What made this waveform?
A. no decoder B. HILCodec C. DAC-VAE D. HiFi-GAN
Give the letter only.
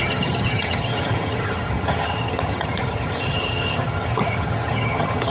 D